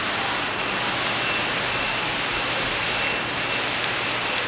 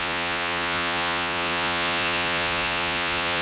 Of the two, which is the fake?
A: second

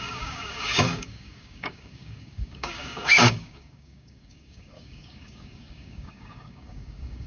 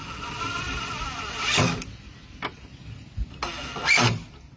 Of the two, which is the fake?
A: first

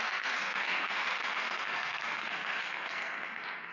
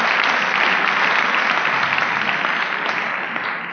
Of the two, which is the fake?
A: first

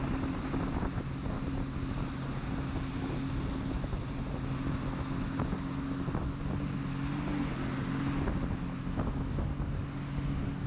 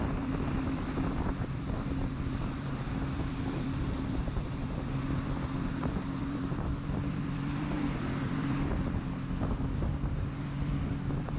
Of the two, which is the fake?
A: second